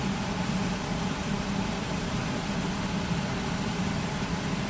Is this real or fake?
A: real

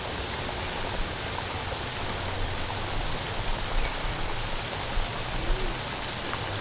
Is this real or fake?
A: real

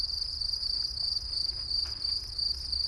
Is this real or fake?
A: real